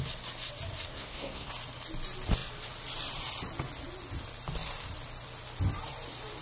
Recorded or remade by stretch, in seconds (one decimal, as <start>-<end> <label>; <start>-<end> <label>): 0.0-0.9 recorded; 0.9-1.5 remade; 1.5-6.4 recorded